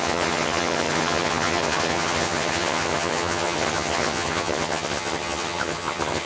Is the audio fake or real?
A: fake